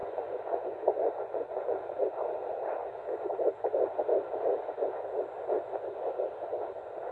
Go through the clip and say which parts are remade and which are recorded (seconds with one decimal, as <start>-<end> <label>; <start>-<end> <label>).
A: 0.0-1.7 remade; 1.7-7.1 recorded